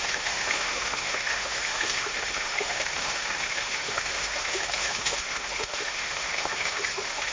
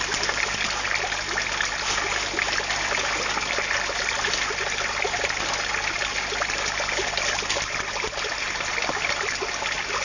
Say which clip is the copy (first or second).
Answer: first